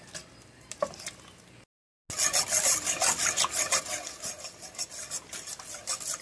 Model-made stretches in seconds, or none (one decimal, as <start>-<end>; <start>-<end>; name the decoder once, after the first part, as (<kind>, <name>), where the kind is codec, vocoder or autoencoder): none